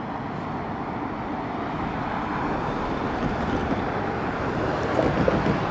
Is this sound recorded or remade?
recorded